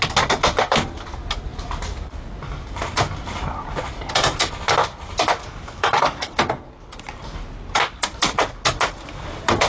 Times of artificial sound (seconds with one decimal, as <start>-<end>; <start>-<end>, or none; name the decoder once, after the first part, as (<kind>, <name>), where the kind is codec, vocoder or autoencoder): 5.4-6.4 (codec, DAC)